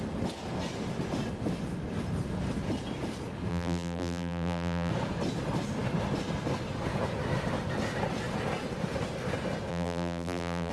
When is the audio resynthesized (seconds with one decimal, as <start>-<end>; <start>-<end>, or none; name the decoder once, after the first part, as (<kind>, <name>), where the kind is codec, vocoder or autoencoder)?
3.5-4.9 (vocoder, BigVGAN v2); 9.7-10.7